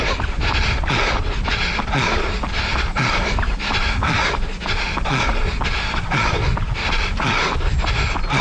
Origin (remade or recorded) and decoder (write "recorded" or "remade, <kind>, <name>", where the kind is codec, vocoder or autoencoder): remade, vocoder, BigVGAN v2